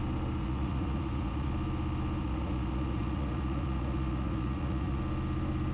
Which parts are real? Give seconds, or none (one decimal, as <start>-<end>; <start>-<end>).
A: 0.0-0.4; 1.5-2.2; 5.0-5.7